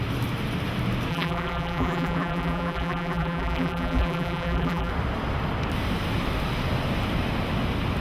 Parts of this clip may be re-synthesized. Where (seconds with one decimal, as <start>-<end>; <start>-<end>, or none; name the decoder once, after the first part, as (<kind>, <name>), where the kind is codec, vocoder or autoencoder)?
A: 1.1-4.9 (vocoder, BigVGAN v2)